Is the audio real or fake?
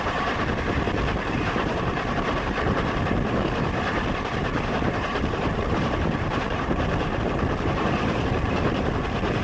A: fake